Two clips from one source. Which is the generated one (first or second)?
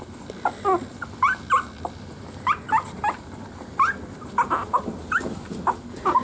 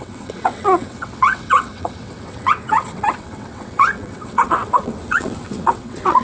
second